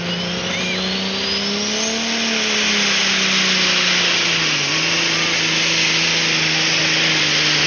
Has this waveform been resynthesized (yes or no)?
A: no